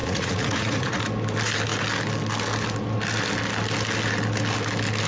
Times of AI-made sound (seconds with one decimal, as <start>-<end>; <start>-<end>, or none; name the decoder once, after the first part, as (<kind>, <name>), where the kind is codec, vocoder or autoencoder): 0.0-1.0 (vocoder, Vocos)